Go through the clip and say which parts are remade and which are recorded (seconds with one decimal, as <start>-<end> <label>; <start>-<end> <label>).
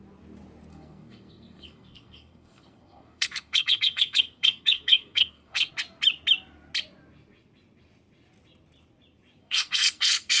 0.0-0.7 recorded; 0.7-5.7 remade; 5.7-9.4 recorded; 9.4-10.4 remade